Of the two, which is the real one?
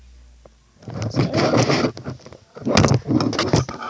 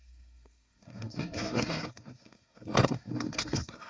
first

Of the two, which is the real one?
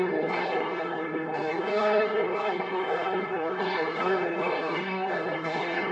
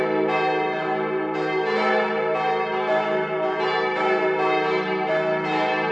second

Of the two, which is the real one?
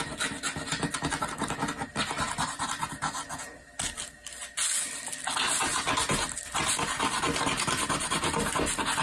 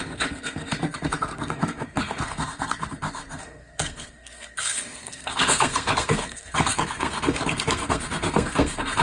first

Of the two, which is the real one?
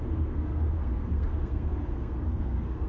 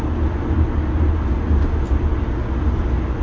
second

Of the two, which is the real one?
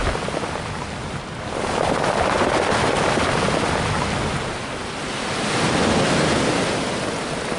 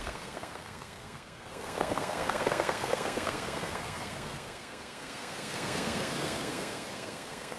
first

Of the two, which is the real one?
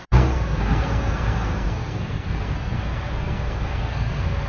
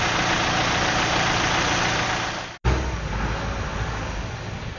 second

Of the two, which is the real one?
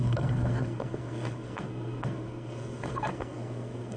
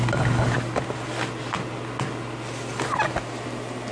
second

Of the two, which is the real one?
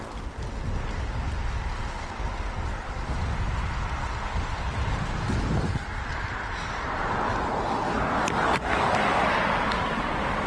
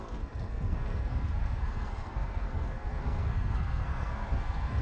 first